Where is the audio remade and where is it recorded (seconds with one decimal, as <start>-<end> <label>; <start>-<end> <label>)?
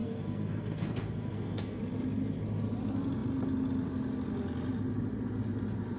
0.0-1.8 remade; 1.8-6.0 recorded